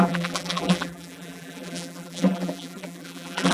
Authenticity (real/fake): fake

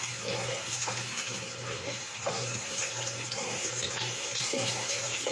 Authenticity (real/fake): fake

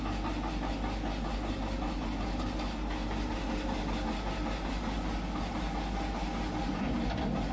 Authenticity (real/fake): real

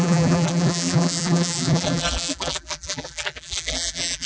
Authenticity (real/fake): fake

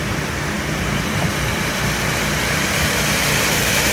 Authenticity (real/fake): fake